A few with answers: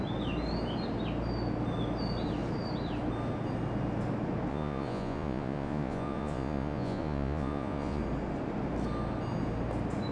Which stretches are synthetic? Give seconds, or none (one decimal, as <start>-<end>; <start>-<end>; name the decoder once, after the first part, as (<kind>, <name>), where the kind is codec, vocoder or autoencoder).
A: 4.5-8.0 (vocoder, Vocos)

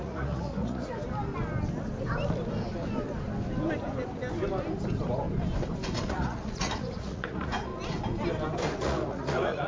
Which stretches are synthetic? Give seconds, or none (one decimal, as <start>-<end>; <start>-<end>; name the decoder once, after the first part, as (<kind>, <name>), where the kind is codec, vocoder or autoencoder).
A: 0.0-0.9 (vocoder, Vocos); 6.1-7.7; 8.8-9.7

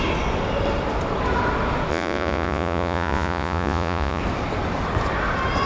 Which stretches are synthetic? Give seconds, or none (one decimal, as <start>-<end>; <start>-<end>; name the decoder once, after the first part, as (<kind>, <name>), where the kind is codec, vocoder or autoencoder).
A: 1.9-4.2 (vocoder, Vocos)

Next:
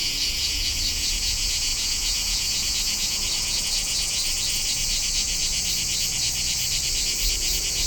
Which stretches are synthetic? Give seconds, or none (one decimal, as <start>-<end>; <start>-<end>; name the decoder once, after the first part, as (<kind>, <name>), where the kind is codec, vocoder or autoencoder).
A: 0.0-4.2 (vocoder, Vocos); 4.7-5.4; 7.3-7.9

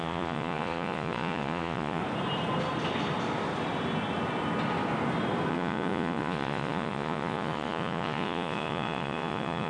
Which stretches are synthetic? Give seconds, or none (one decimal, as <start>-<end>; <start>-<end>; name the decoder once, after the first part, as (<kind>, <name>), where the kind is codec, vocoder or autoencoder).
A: 0.0-2.0 (vocoder, Vocos); 5.5-9.7

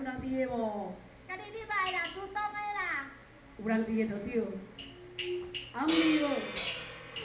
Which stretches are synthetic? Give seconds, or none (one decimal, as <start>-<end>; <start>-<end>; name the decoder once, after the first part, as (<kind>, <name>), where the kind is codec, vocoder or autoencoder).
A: none

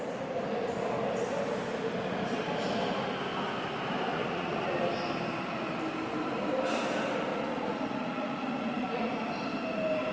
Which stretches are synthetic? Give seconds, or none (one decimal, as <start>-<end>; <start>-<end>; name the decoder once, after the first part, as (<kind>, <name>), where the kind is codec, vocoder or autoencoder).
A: 4.1-4.7 (vocoder, Vocos); 7.3-9.0